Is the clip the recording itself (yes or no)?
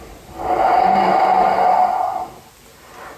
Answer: yes